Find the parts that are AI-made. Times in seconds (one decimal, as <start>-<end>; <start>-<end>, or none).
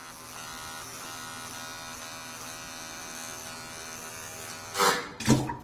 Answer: none